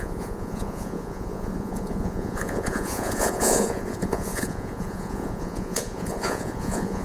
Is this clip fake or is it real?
fake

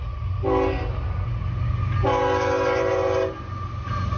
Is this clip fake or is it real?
real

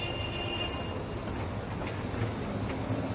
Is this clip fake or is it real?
real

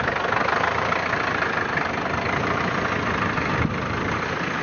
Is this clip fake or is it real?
real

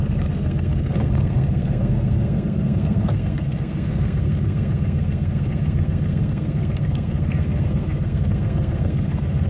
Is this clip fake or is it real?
fake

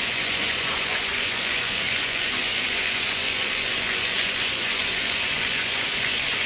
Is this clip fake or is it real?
fake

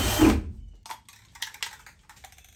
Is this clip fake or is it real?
real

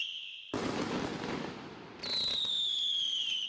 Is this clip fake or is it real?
real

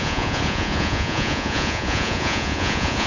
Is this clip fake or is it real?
fake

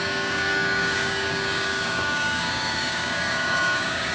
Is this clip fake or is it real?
fake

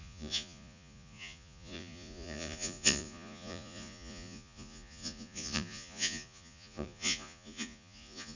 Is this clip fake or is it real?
fake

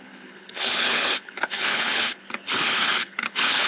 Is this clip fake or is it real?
fake